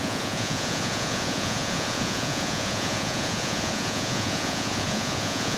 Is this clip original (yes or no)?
no